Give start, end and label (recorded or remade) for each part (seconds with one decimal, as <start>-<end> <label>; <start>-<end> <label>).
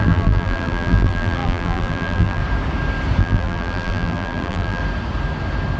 0.0-2.4 remade; 2.4-3.2 recorded; 3.2-4.8 remade; 4.8-5.8 recorded